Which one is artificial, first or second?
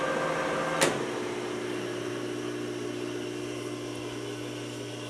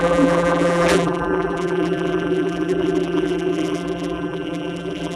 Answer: second